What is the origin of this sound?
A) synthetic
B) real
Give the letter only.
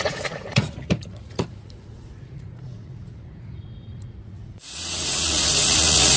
A